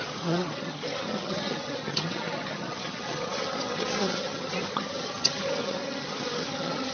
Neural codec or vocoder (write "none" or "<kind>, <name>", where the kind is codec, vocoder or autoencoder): vocoder, HiFi-GAN